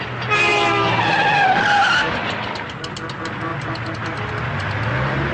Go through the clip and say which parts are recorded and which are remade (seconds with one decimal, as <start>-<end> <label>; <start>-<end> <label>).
0.0-3.5 recorded; 3.5-4.5 remade; 4.5-5.3 recorded